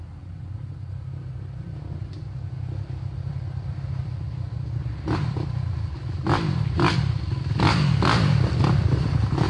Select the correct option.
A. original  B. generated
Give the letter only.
B